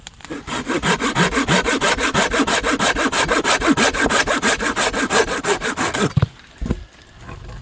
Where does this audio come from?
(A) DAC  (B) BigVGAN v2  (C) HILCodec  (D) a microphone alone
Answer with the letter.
D